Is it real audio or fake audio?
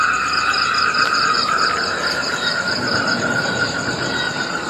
real